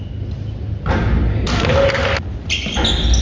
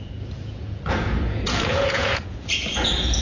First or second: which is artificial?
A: second